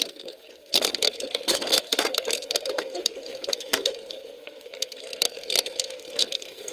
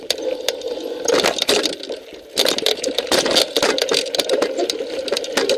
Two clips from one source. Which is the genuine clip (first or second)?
second